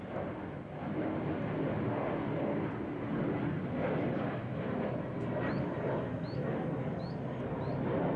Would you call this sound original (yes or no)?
yes